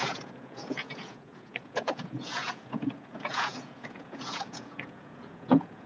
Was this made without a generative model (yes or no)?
no